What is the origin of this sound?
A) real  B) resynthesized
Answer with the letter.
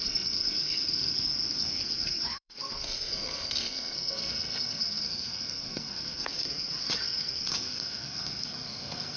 B